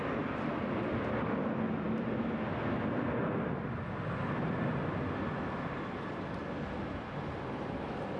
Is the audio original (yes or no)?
yes